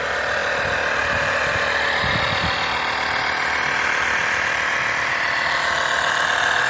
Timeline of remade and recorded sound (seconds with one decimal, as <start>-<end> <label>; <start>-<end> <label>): 0.0-6.7 recorded